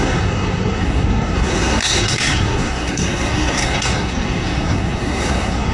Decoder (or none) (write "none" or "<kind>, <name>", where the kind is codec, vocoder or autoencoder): codec, SNAC